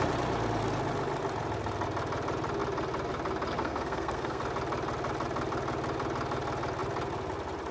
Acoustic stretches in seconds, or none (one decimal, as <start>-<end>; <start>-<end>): 0.0-3.6; 4.4-7.7